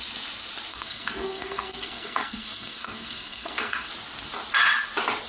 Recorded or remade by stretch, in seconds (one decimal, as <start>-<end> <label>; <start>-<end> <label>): 0.0-0.7 recorded; 0.7-3.9 remade; 3.9-5.3 recorded